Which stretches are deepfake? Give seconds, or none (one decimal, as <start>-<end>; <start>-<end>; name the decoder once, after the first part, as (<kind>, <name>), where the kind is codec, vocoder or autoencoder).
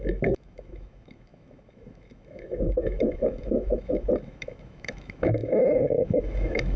0.0-6.8 (autoencoder, DAC-VAE)